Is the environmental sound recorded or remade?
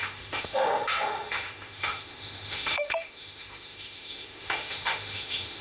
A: remade